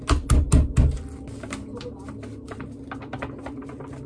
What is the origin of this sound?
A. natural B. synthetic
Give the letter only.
A